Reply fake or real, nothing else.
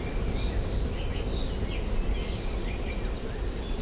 real